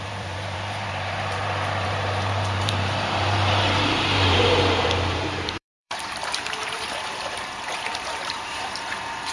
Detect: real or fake fake